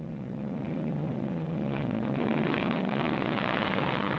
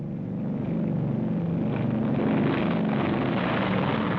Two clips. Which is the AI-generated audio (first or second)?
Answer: first